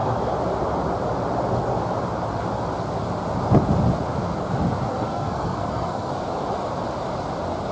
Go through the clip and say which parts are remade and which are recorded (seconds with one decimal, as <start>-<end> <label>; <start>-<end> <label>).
0.0-4.9 recorded; 4.9-6.1 remade; 6.1-7.7 recorded